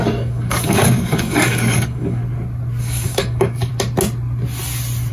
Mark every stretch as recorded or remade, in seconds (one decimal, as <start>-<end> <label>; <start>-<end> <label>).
0.0-2.2 remade; 2.2-2.8 recorded; 2.8-3.7 remade; 3.7-5.1 recorded